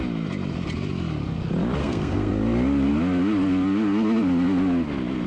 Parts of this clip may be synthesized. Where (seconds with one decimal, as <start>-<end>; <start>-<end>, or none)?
1.8-2.3